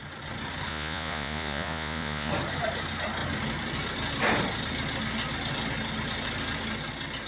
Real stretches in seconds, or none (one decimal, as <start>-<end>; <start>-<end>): 0.0-0.7; 2.3-7.3

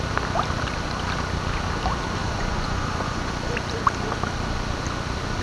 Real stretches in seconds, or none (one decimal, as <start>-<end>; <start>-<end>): 0.0-2.2; 3.3-5.4

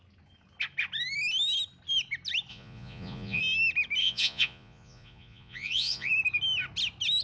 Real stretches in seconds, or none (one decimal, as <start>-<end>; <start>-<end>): 0.0-2.5; 3.4-4.0; 6.1-7.2

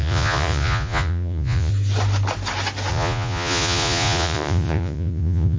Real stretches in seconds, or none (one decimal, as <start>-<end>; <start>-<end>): 1.7-2.9

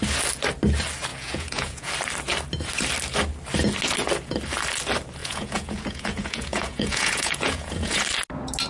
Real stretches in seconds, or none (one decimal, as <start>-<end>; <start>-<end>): 0.0-1.1; 1.9-5.2; 8.0-8.7

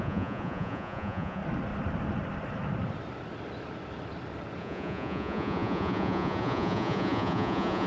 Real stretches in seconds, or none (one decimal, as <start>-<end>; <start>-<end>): 1.4-4.6

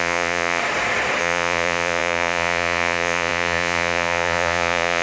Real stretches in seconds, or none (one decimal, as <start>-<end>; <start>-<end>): 0.6-1.2

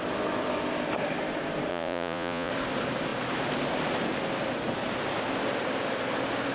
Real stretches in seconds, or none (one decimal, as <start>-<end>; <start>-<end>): 0.0-1.7; 2.5-6.5